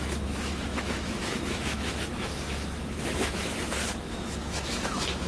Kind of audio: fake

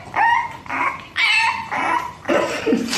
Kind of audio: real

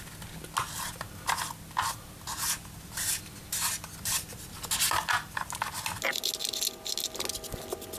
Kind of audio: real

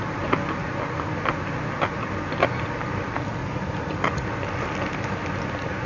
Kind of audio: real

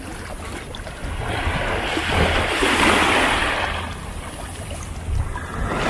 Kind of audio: real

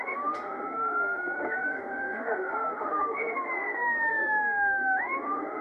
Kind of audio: fake